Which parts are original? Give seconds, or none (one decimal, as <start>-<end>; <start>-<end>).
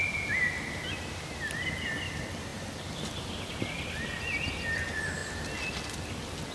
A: 0.0-6.5